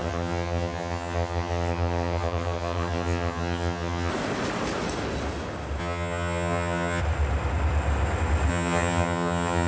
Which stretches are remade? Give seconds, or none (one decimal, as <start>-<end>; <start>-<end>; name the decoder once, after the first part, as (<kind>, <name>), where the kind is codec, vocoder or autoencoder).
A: 0.0-4.1 (vocoder, HiFi-GAN); 5.8-7.0; 8.5-9.7